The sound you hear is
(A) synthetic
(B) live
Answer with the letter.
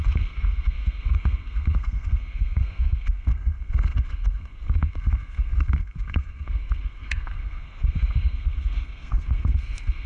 A